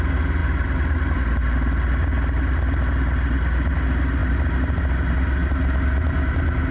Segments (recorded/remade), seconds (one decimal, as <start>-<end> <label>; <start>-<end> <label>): 0.0-6.7 recorded